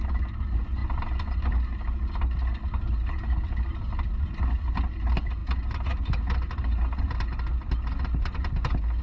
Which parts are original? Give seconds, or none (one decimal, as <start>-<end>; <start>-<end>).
0.0-9.0